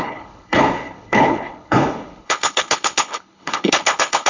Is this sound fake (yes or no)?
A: yes